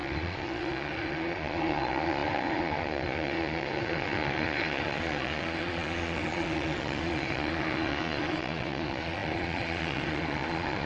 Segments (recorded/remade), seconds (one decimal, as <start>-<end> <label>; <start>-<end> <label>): 0.0-10.9 remade